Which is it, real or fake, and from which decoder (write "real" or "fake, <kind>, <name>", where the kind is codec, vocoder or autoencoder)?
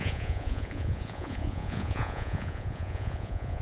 fake, vocoder, Vocos